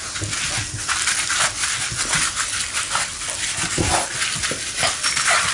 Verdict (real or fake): real